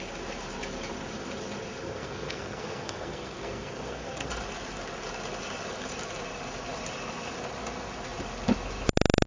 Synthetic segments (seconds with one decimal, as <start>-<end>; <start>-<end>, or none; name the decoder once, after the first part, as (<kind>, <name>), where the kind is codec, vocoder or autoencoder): 1.8-4.3 (codec, SNAC)